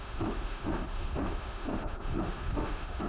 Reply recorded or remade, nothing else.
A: remade